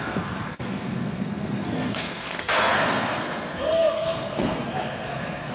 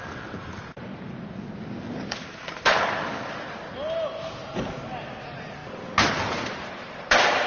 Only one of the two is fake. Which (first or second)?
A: first